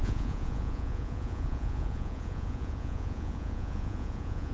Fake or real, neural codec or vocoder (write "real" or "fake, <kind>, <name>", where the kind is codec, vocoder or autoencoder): fake, vocoder, Vocos